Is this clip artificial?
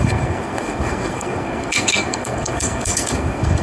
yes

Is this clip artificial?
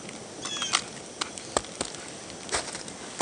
no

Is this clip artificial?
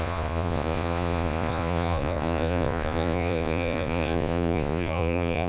yes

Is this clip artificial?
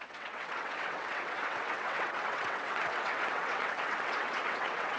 yes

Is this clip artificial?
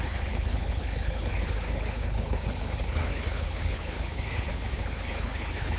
yes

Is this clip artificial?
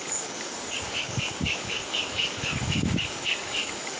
yes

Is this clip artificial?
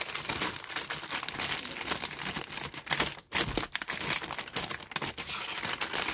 no